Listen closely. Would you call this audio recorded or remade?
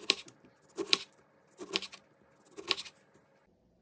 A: recorded